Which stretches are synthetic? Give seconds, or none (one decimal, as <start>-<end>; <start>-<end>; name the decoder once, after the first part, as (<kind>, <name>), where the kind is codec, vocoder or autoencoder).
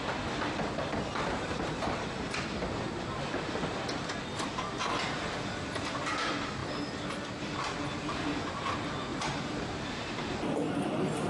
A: 9.1-10.1 (vocoder, BigVGAN v2)